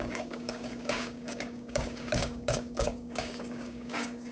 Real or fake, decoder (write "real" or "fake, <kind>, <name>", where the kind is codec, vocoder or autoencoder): fake, codec, DAC